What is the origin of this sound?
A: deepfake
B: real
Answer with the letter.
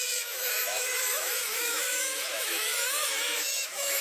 A